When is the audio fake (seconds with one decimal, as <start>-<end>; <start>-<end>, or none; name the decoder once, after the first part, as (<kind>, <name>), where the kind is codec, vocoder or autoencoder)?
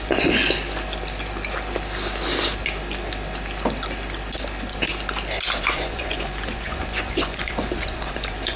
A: 0.0-0.4 (vocoder, Vocos); 5.6-8.6